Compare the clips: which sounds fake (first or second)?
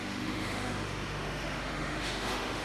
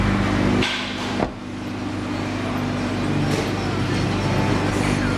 first